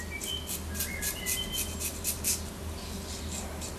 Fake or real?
real